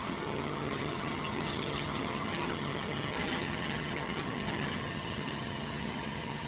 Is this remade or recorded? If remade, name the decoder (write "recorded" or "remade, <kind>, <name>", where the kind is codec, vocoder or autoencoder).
remade, vocoder, HiFi-GAN